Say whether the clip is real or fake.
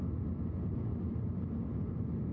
real